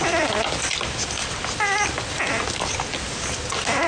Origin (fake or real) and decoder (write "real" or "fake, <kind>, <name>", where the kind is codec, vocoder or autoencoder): real